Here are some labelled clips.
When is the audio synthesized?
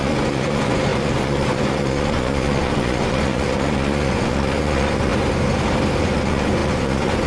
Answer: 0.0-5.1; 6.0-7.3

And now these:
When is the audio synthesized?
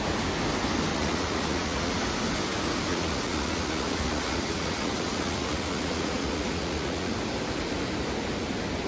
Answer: 0.9-2.0; 2.9-7.1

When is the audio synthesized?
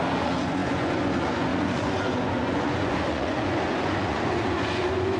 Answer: 0.0-5.2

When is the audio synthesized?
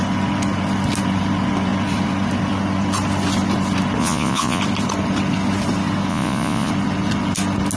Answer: 4.0-4.6; 6.1-6.7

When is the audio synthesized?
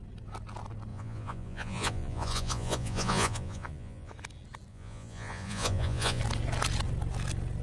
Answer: 0.9-4.1; 4.7-6.2